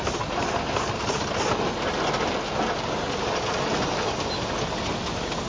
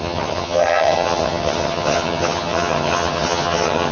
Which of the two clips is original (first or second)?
first